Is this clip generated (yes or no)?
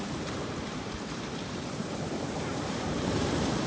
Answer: yes